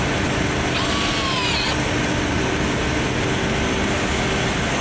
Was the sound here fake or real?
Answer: real